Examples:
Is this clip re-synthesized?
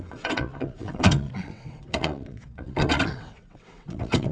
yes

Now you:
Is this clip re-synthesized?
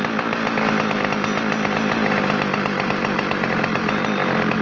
no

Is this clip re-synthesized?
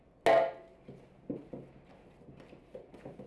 no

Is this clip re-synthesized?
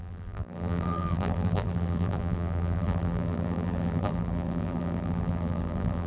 yes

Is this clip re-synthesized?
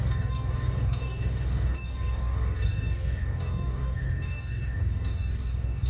yes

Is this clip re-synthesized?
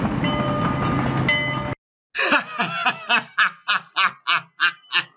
no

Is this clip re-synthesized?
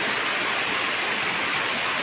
no